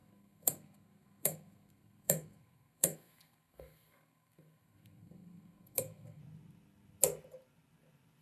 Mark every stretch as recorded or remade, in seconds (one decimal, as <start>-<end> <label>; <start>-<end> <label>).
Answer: 0.0-6.2 remade; 6.2-8.2 recorded